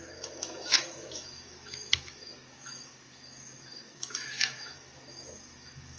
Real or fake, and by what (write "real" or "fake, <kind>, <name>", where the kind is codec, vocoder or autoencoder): fake, autoencoder, DAC-VAE